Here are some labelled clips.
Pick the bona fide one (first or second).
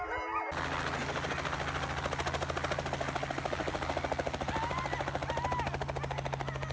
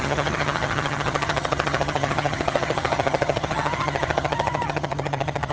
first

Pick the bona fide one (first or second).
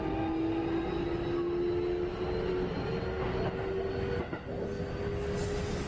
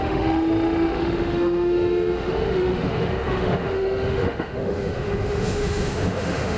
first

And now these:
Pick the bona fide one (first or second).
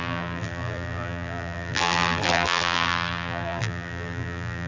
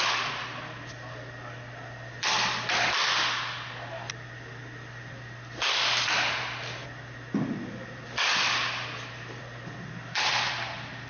second